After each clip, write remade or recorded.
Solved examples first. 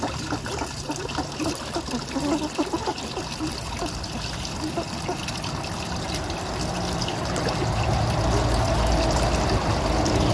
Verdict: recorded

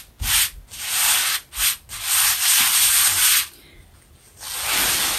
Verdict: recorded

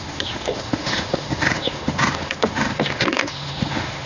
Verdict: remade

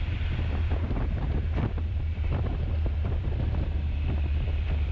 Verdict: remade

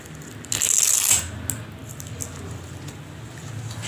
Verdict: recorded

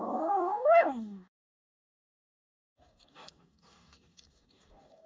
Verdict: remade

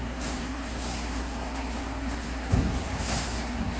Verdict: remade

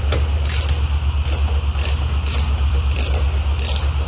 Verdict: recorded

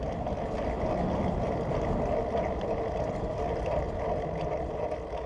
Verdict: recorded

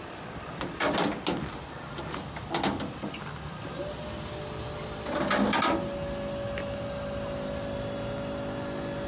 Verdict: recorded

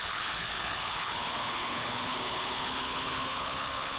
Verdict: remade